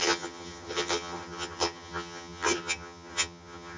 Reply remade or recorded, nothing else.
remade